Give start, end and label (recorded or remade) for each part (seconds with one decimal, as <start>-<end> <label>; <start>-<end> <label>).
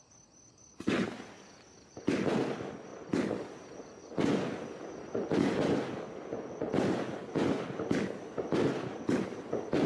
0.0-9.9 recorded